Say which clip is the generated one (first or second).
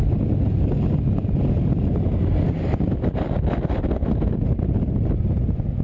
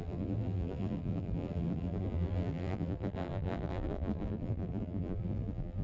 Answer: second